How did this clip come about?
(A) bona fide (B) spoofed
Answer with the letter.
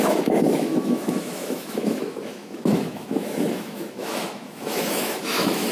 B